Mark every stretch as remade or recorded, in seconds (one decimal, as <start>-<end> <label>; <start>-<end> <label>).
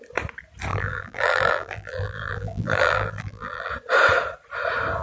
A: 0.0-0.7 recorded; 0.7-3.7 remade; 3.7-5.0 recorded